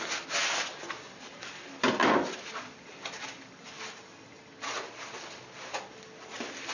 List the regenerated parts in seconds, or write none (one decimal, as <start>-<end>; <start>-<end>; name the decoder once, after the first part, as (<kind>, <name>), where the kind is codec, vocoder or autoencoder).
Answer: none